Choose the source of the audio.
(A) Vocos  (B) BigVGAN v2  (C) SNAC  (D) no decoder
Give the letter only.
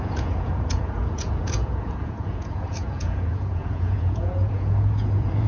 A